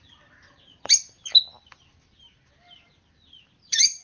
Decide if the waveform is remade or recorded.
recorded